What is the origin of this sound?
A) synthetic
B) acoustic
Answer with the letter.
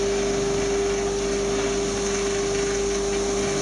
B